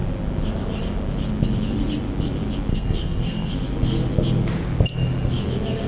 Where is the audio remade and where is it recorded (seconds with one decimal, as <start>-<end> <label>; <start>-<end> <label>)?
0.0-2.7 recorded; 2.7-3.5 remade; 3.5-5.9 recorded